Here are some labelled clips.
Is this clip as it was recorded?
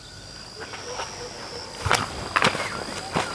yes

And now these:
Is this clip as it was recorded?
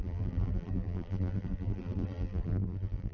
no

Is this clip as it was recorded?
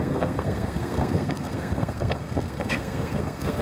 no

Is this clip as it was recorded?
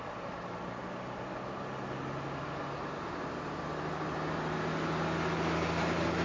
yes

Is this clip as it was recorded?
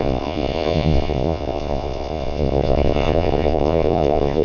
no